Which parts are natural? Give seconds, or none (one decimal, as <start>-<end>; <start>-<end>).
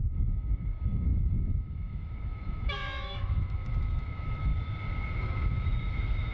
4.5-5.2